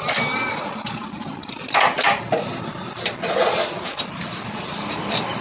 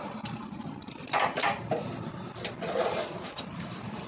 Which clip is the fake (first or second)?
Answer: second